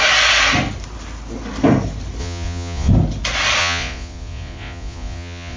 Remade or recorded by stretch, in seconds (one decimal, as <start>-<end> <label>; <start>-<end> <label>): 0.0-2.2 recorded; 2.2-2.9 remade; 2.9-3.6 recorded; 3.6-5.6 remade